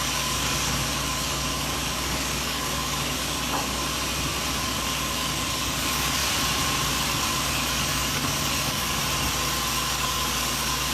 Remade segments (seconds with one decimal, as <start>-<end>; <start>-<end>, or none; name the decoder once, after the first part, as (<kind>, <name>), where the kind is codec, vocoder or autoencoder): 0.0-3.8 (codec, DAC); 4.6-6.2; 6.9-9.0; 9.7-10.9